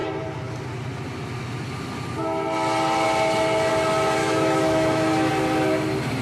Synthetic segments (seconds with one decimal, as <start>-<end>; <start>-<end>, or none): 4.2-5.3